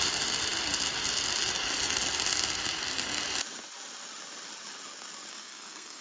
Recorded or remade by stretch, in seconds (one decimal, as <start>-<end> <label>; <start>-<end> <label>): 0.0-5.3 recorded; 5.3-6.0 remade

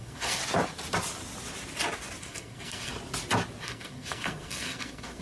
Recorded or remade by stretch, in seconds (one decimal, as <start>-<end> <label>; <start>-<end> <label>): 0.0-0.4 remade; 0.4-2.2 recorded; 2.2-2.9 remade; 2.9-3.6 recorded; 3.6-5.2 remade

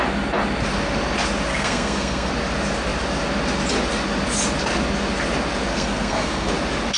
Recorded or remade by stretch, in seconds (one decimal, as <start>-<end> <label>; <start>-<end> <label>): 0.0-1.5 recorded; 1.5-2.3 remade; 2.3-5.7 recorded; 5.7-6.5 remade; 6.5-7.0 recorded

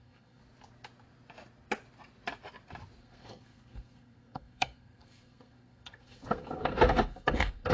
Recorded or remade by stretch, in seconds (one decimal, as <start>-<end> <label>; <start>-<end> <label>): 0.0-0.4 remade; 0.4-3.0 recorded; 3.0-7.7 remade